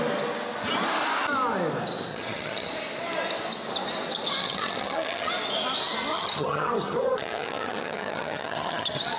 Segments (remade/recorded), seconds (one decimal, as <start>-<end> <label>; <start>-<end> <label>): 0.0-2.1 recorded; 2.1-2.7 remade; 2.7-4.4 recorded; 4.4-5.3 remade; 5.3-6.1 recorded; 6.1-9.2 remade